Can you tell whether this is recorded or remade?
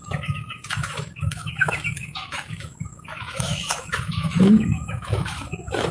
remade